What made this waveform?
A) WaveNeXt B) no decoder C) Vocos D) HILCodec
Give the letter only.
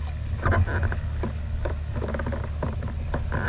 B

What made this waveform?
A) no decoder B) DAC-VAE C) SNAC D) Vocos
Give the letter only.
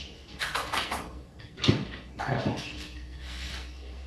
C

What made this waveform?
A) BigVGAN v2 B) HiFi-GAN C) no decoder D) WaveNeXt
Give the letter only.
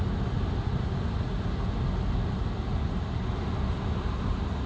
C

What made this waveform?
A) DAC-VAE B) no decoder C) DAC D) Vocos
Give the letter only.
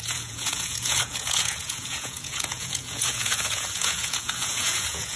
D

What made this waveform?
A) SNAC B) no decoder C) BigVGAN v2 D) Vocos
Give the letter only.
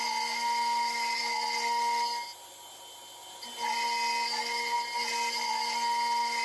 B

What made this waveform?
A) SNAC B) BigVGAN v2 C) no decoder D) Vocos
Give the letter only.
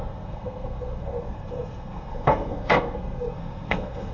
A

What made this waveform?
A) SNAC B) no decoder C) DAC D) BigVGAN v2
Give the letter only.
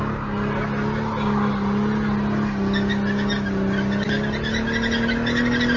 B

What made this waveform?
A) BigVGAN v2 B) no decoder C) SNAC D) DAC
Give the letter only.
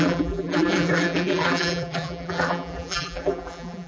A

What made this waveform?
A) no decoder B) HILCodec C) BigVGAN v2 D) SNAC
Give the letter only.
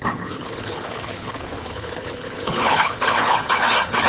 B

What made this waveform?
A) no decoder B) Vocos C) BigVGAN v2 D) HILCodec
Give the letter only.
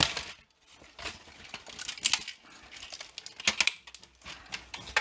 A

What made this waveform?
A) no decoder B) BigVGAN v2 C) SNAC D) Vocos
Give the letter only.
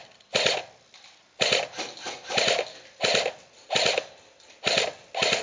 A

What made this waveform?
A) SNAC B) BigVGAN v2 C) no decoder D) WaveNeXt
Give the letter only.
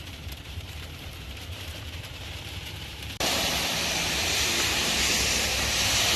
B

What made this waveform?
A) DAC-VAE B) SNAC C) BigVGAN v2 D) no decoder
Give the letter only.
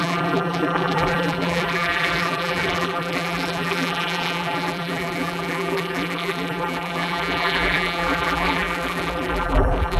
C